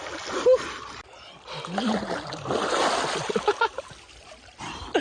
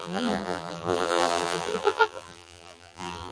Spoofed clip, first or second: second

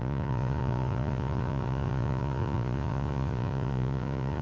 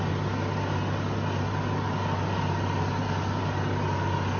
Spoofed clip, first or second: first